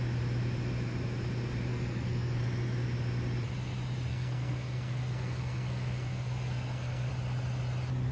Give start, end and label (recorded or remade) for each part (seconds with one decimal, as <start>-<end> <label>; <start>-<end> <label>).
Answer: 0.0-1.7 recorded; 1.7-2.4 remade; 2.4-4.1 recorded; 4.1-7.1 remade; 7.1-8.1 recorded